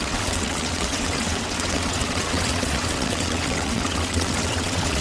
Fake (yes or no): yes